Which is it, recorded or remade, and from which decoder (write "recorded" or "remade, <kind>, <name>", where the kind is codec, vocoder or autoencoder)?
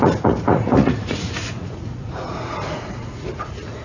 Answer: remade, vocoder, Vocos